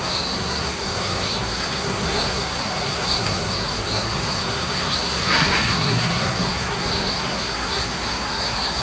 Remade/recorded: remade